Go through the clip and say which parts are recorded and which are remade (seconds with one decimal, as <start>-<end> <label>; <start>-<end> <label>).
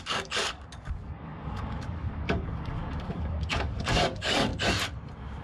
0.0-4.5 remade; 4.5-5.4 recorded